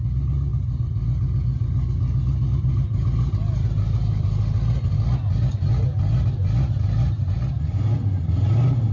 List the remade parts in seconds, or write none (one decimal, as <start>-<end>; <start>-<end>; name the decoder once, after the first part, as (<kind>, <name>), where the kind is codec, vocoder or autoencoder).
none